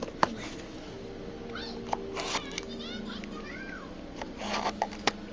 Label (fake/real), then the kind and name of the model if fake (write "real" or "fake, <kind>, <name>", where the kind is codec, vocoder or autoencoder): real